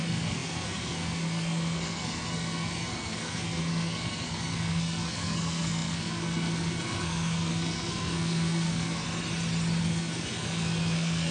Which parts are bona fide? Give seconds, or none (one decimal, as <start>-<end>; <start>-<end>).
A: 9.0-9.8